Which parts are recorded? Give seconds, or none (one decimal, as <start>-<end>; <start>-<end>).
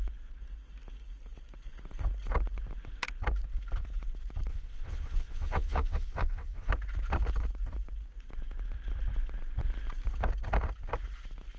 0.0-4.5; 6.7-11.6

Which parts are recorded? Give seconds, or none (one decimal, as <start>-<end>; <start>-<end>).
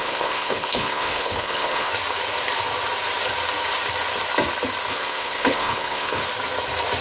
1.9-4.9; 6.2-7.0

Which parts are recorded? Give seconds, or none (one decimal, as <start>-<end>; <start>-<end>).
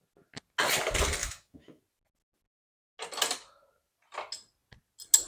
0.0-1.2; 1.8-5.3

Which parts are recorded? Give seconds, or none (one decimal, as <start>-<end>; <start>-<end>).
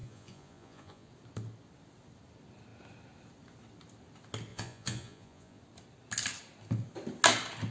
1.1-4.5; 5.6-7.7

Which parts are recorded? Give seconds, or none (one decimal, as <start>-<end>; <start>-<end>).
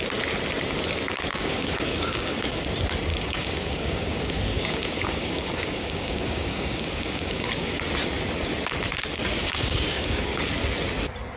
0.0-1.3; 2.6-3.1; 7.8-9.4; 10.4-11.4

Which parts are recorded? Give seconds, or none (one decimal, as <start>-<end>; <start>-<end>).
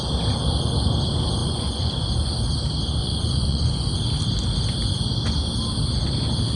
0.0-1.4; 2.1-3.0; 4.0-6.6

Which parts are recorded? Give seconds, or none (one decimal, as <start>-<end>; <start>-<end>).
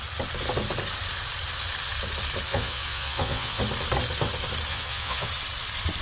0.0-2.5; 3.6-4.7; 5.3-6.0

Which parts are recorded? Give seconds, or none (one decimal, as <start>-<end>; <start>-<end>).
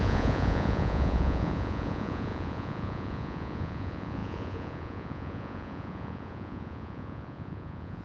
none